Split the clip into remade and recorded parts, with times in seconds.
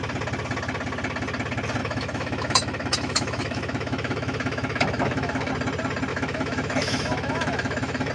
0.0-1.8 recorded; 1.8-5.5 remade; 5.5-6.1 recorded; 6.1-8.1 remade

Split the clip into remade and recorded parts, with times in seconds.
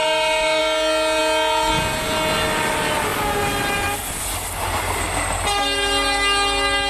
0.0-0.6 remade; 0.6-6.9 recorded